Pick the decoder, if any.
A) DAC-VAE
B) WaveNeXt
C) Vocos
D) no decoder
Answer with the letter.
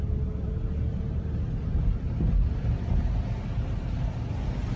D